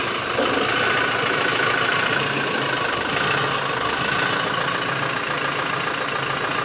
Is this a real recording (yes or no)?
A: yes